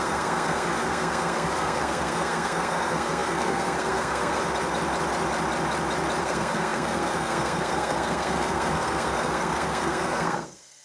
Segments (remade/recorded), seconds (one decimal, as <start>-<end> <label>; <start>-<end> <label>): 0.0-4.4 remade; 4.4-6.2 recorded; 6.2-10.8 remade